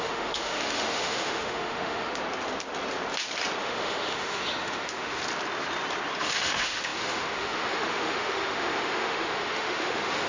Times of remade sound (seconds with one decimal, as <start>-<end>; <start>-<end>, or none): 0.0-2.1; 3.6-5.2; 6.2-10.3